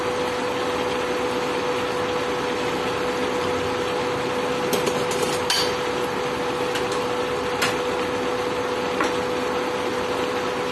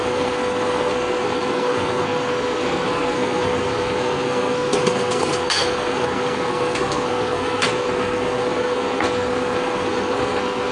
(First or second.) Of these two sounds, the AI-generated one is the second